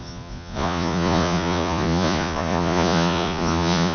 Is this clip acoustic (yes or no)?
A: no